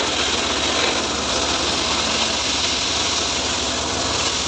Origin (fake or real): real